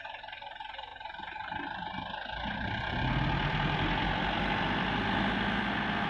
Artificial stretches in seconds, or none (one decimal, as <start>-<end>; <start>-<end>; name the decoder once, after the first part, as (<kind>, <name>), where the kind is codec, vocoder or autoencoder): none